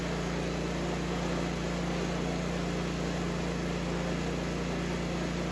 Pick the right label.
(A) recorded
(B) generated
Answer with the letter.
A